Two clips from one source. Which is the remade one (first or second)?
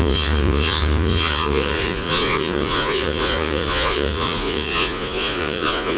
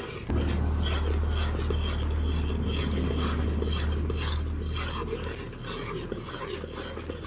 first